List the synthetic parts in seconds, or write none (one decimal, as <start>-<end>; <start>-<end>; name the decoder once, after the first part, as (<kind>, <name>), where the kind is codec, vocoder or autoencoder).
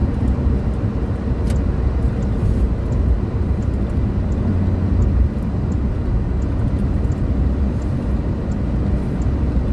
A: none